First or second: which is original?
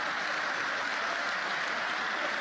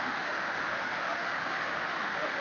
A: first